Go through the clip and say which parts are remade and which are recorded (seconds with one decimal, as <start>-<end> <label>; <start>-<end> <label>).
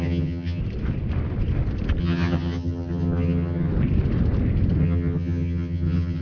0.0-0.6 remade; 0.6-2.0 recorded; 2.0-3.7 remade; 3.7-4.8 recorded; 4.8-6.2 remade